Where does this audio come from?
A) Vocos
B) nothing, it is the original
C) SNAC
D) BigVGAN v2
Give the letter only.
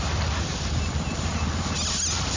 B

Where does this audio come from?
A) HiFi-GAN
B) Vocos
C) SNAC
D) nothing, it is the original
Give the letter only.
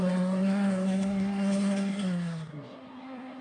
C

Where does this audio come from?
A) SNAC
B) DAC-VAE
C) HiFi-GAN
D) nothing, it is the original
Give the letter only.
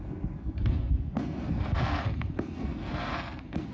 A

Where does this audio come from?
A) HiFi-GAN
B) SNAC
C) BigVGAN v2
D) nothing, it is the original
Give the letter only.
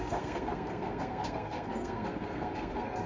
B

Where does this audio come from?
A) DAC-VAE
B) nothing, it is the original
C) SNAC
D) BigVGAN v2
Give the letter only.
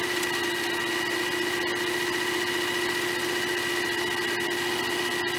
B